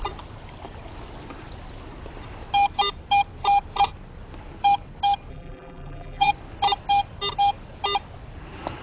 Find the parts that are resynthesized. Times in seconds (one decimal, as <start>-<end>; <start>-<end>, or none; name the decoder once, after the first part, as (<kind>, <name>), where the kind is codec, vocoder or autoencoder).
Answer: 5.3-6.3 (vocoder, BigVGAN v2)